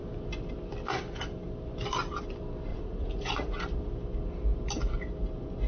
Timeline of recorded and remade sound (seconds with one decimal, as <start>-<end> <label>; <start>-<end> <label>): 0.0-2.7 recorded; 2.7-3.6 remade; 3.6-5.7 recorded